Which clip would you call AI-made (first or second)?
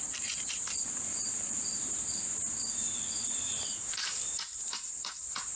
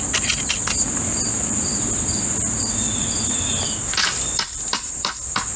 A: first